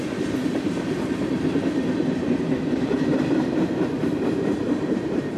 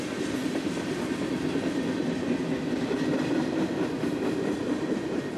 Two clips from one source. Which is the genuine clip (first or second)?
second